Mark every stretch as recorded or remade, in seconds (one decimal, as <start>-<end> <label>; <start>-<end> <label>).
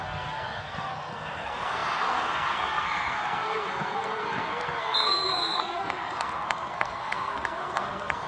0.0-8.3 remade